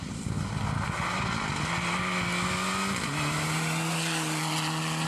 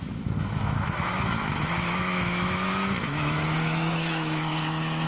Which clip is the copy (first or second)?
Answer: second